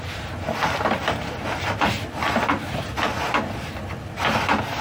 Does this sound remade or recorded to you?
recorded